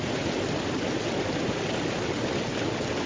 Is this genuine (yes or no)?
yes